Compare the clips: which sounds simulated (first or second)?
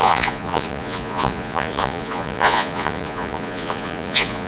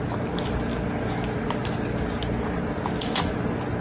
first